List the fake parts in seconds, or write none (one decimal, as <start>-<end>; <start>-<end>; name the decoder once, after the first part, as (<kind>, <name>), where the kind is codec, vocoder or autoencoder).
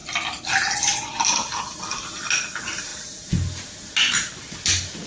none